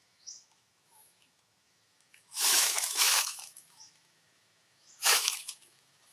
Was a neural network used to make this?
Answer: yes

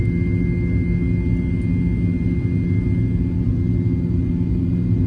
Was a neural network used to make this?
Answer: no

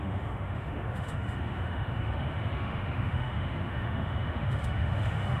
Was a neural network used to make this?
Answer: yes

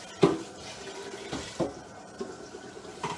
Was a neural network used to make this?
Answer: no